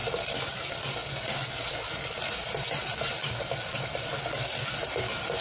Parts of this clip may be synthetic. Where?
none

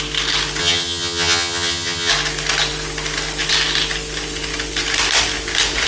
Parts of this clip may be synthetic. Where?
0.6-2.1 (vocoder, HiFi-GAN)

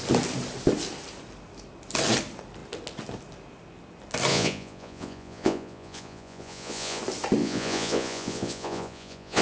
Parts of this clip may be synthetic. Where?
4.3-7.0 (vocoder, Vocos); 7.4-9.4

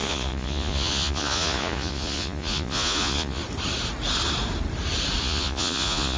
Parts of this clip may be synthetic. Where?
0.0-3.4 (vocoder, Vocos); 5.2-6.2

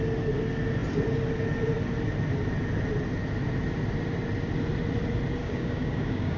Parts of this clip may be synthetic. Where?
5.4-6.4 (codec, DAC)

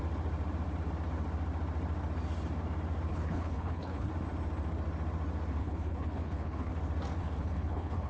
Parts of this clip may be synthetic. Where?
3.1-4.1 (codec, HILCodec); 5.6-6.7; 7.2-8.1

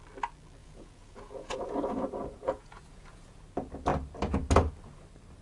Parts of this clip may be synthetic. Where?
0.6-3.4 (vocoder, Vocos)